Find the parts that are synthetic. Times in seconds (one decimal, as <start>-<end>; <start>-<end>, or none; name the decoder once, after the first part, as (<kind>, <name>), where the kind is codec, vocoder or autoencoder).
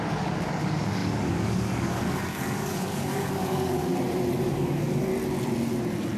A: 0.0-3.8 (codec, DAC); 4.5-5.1